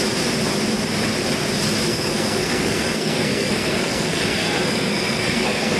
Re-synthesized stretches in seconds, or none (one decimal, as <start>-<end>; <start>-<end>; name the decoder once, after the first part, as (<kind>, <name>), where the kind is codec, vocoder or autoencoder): 1.9-5.8 (codec, SNAC)